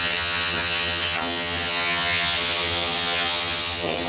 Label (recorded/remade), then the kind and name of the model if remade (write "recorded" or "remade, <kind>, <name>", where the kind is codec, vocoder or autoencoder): remade, vocoder, HiFi-GAN